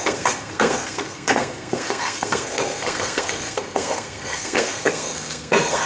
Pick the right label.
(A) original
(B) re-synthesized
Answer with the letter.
B